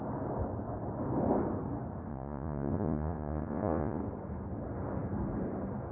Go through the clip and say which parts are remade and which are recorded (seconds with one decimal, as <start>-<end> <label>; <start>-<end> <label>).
0.0-2.1 recorded; 2.1-4.0 remade; 4.0-5.9 recorded